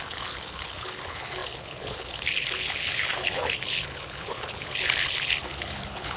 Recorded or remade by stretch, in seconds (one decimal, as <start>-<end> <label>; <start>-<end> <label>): 0.0-6.2 remade